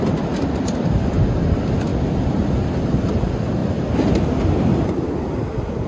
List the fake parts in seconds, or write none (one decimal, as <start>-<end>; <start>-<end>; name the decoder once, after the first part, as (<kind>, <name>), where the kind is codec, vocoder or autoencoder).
none